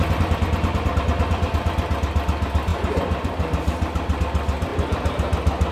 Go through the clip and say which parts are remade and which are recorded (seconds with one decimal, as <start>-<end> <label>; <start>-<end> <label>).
0.0-5.7 recorded